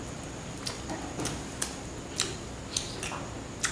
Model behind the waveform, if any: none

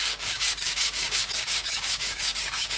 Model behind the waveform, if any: codec, DAC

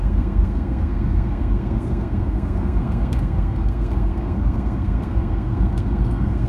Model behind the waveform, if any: codec, SNAC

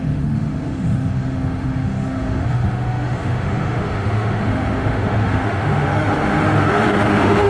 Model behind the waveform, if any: autoencoder, DAC-VAE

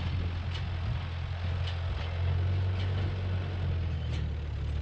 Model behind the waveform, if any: none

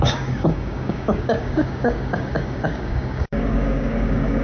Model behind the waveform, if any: codec, DAC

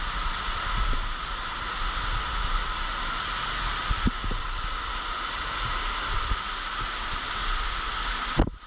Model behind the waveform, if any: none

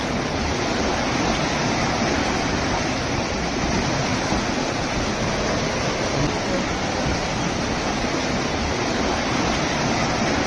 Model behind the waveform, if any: none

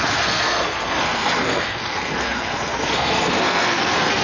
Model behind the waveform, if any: codec, SNAC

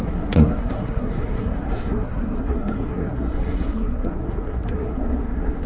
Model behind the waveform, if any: codec, SNAC